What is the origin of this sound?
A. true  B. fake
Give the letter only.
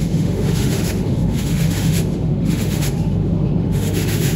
B